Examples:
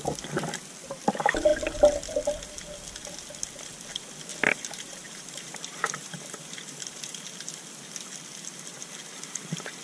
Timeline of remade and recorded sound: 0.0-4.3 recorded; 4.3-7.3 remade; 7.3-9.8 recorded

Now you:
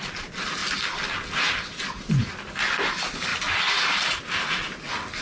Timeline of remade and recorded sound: 0.0-5.2 recorded

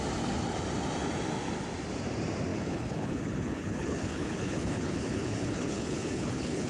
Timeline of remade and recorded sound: 0.0-2.5 recorded; 2.5-6.7 remade

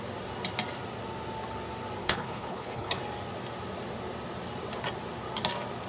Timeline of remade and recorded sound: 0.0-2.0 recorded; 2.0-3.0 remade; 3.0-5.9 recorded

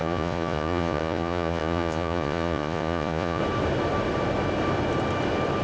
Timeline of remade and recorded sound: 0.0-3.4 remade; 3.4-5.6 recorded

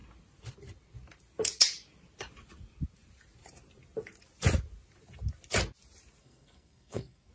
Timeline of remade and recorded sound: 0.0-6.2 recorded; 6.2-7.3 remade

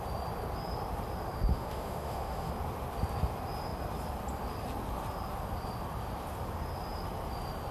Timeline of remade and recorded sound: 0.0-1.5 recorded; 1.5-2.5 remade; 2.5-7.7 recorded